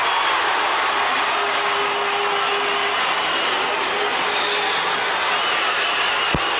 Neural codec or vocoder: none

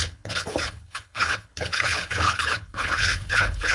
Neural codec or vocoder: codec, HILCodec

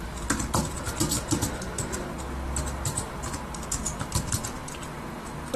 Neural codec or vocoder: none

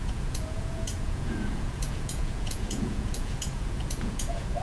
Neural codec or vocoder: vocoder, Vocos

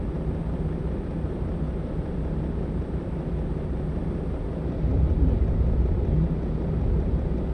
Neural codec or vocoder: none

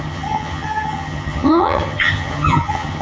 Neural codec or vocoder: vocoder, HiFi-GAN